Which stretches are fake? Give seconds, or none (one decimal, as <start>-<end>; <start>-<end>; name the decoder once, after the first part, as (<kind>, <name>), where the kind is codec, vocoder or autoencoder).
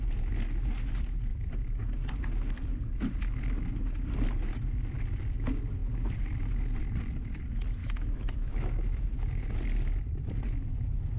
7.8-9.4 (autoencoder, DAC-VAE)